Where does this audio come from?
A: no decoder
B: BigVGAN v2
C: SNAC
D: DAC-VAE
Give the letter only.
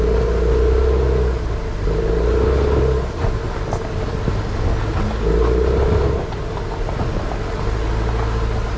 A